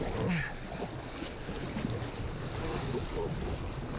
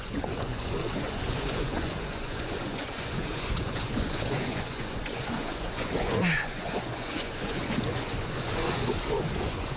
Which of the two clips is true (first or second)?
first